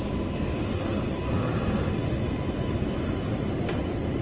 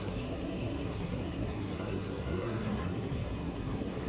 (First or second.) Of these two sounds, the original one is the first